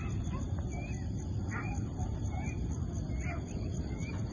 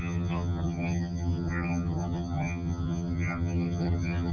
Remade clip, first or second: second